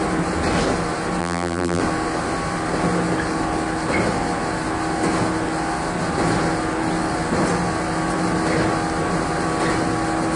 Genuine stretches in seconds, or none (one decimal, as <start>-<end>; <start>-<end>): 0.0-1.2; 1.8-10.4